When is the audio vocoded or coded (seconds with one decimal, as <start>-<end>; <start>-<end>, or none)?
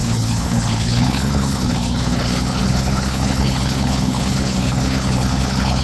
0.0-5.8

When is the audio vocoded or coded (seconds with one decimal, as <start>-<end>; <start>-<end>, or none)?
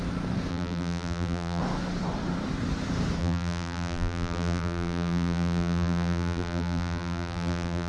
0.5-1.6; 3.2-7.9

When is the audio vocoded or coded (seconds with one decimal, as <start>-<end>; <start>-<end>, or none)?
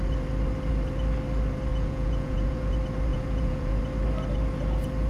1.7-2.7; 3.1-3.8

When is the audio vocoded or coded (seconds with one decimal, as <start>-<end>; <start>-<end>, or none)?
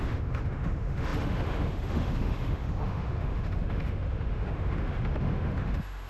0.0-6.1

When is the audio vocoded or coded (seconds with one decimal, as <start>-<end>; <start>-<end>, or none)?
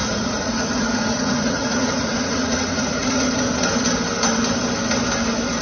0.0-3.4